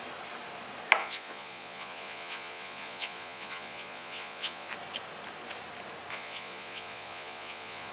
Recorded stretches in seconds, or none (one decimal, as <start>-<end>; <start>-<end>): 0.0-1.0; 4.7-6.1